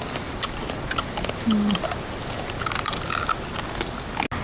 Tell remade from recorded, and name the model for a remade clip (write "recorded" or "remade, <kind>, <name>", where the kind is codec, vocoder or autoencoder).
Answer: recorded